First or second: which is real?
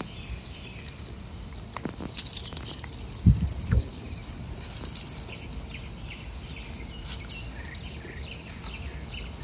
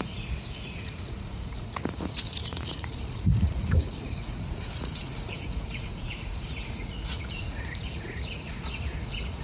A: first